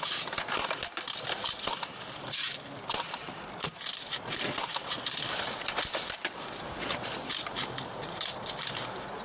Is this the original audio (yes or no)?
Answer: no